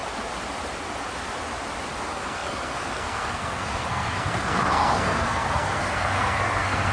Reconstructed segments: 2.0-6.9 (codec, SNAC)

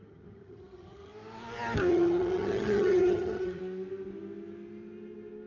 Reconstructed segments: 0.0-1.1 (vocoder, HiFi-GAN); 1.9-3.6

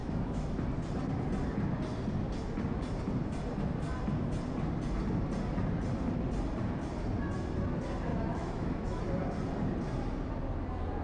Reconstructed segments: 0.0-0.6 (autoencoder, DAC-VAE); 8.1-9.0

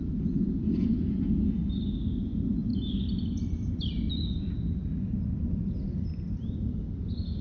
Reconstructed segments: 0.0-1.6 (vocoder, Vocos); 2.2-2.7

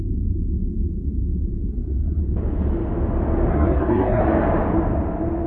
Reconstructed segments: 1.7-2.2 (codec, SNAC); 3.5-4.2

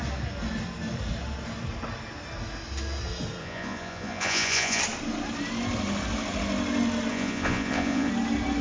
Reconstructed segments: 3.4-4.8 (vocoder, Vocos); 7.1-8.1

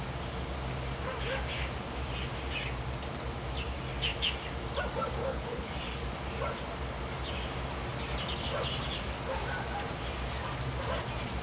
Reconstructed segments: 5.2-5.7 (codec, HILCodec)

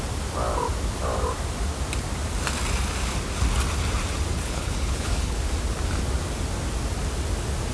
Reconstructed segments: 4.3-5.4 (codec, HILCodec)